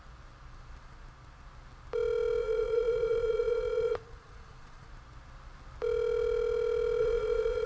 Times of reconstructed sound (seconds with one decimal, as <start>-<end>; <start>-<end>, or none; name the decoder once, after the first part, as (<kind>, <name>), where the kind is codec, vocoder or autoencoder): 2.4-4.9 (vocoder, Vocos); 7.0-7.7